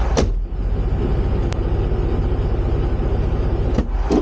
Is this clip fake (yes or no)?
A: no